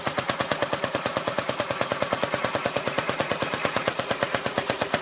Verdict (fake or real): fake